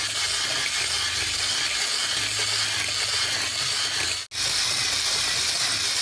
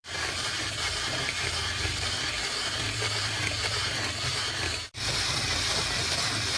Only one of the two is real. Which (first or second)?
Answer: first